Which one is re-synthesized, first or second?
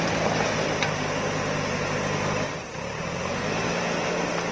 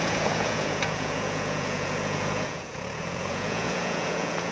second